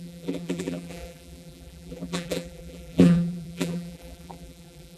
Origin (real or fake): fake